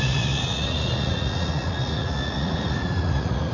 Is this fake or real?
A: fake